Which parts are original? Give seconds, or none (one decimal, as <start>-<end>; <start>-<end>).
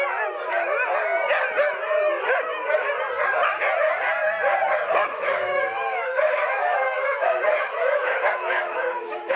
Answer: 0.0-5.0